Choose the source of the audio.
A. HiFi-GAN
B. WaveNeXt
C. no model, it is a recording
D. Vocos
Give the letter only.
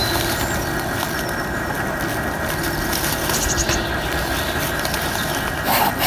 C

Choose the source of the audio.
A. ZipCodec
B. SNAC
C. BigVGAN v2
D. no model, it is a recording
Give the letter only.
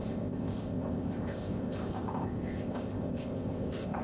A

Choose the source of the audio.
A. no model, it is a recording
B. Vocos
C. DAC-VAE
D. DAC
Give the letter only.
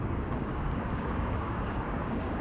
D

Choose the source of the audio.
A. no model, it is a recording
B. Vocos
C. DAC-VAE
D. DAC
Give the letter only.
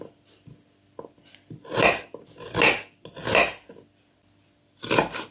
A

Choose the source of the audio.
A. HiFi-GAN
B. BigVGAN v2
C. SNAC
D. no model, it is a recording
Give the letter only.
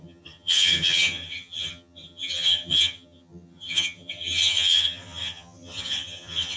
A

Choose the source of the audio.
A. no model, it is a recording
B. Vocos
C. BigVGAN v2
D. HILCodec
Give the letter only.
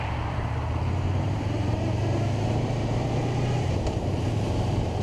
C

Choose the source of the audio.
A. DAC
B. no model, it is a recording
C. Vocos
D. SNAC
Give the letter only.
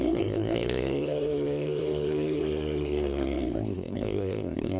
D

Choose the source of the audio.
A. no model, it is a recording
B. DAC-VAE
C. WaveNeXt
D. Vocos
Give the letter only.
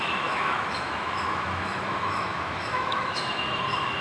B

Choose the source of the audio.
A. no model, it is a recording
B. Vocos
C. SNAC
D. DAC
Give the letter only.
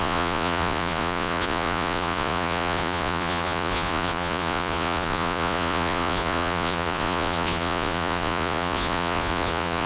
B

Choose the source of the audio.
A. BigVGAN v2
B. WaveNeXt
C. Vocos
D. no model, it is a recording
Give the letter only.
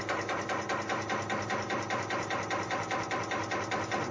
D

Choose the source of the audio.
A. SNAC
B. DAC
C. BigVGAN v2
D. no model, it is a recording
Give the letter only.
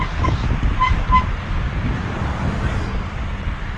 D